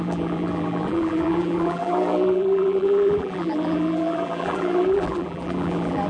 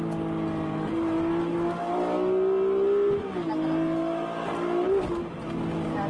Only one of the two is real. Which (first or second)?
second